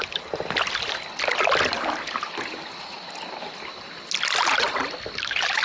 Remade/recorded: recorded